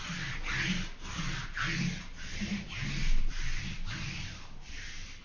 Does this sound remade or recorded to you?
recorded